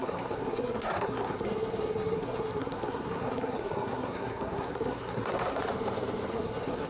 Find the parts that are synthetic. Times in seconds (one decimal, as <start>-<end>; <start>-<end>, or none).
0.0-5.6; 6.3-6.9

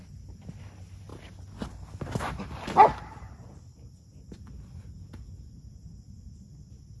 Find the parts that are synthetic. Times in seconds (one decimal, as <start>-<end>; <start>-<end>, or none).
none

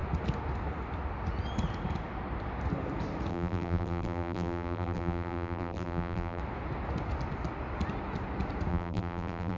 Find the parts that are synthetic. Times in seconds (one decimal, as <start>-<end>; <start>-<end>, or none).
3.3-6.4; 8.7-9.6

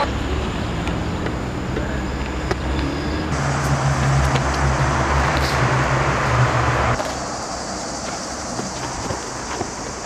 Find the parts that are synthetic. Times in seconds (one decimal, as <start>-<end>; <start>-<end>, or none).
0.0-0.9; 4.8-9.1; 9.6-10.1

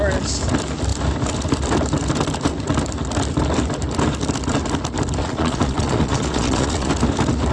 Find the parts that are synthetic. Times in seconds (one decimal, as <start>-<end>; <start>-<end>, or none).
5.2-6.9

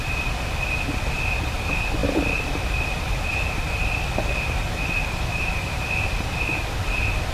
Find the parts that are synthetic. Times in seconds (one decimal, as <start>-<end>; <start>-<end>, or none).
none